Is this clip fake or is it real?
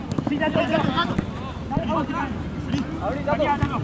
real